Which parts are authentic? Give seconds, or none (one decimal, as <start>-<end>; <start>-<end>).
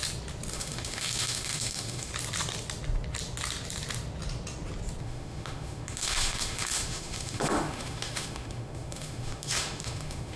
0.0-0.5; 2.1-5.0